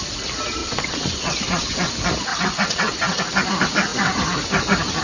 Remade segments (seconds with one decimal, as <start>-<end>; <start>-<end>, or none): 0.6-1.9; 2.3-3.2